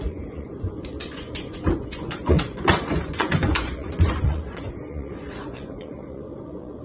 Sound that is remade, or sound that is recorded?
remade